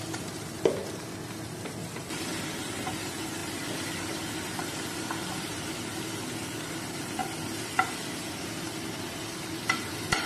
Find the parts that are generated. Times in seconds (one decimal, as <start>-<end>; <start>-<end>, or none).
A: 0.8-1.3; 3.4-5.8